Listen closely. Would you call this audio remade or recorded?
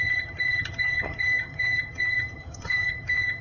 remade